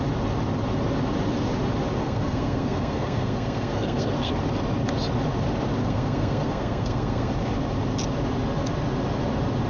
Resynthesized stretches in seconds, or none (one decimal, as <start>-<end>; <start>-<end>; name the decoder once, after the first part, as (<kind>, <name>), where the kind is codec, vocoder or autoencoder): 2.0-4.3 (codec, SNAC); 5.8-7.3